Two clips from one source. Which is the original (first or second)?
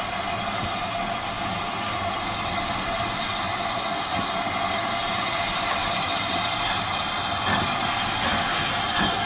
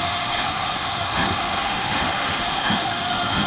first